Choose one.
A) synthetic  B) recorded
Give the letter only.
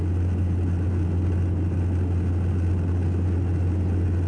B